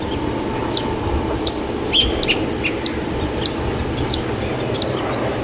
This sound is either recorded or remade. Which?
recorded